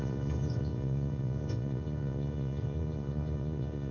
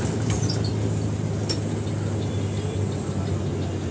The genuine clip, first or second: second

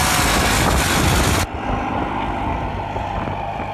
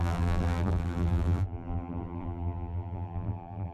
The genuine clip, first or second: first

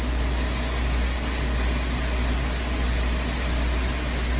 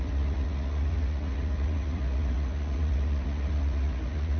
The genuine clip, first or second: first